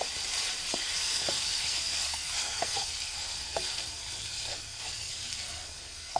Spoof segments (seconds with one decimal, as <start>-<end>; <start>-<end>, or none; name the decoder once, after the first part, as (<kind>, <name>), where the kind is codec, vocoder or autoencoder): 0.7-6.2 (codec, SNAC)